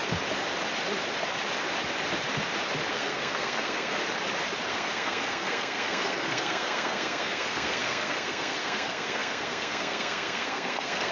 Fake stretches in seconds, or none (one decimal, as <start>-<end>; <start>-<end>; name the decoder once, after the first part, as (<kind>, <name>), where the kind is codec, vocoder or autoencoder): 2.9-4.0 (codec, SNAC); 4.7-11.1